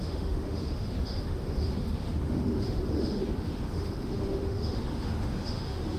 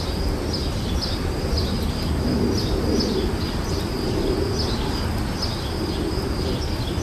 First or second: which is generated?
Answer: first